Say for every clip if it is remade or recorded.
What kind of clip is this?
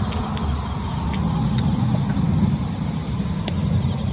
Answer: recorded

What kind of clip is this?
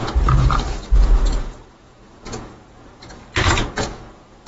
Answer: remade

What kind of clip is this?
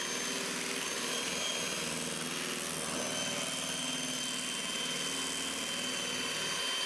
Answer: recorded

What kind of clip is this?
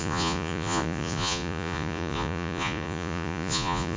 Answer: remade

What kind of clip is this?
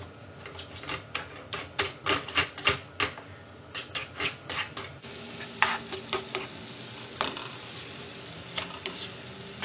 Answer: recorded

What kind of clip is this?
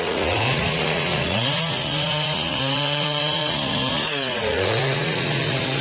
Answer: remade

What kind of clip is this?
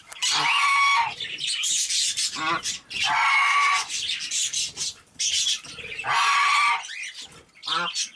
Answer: recorded